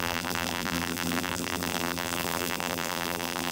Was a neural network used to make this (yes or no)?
yes